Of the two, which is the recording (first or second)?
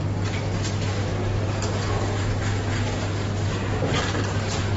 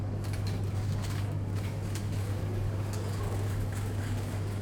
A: first